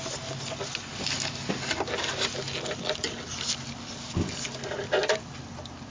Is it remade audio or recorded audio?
recorded